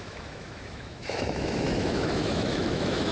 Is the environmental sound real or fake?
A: fake